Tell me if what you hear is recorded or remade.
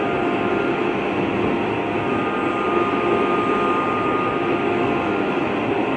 recorded